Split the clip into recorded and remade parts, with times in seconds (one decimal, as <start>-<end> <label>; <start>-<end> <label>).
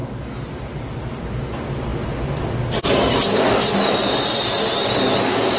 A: 0.0-5.6 recorded